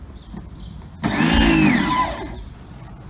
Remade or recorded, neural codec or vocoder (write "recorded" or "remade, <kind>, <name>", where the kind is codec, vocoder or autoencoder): recorded